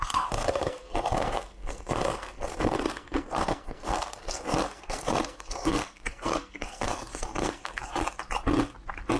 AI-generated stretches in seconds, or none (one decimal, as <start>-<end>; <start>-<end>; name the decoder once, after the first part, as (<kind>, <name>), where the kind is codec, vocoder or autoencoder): 0.0-8.0 (codec, SNAC)